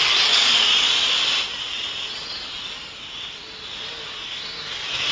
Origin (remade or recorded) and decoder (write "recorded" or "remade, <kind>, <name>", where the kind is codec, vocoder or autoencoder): recorded